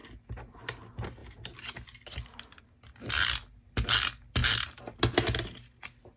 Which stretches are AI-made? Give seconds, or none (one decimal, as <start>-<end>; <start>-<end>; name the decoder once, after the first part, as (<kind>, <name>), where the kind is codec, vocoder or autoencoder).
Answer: none